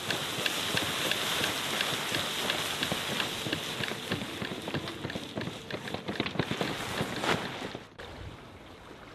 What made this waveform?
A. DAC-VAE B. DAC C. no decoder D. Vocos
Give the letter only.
C